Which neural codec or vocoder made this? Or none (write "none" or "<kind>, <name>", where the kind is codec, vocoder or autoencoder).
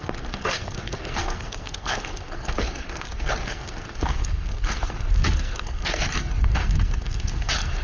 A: codec, SNAC